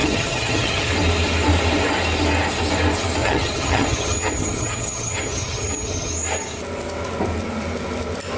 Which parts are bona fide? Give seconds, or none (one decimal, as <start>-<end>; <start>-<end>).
0.9-3.2; 6.1-8.4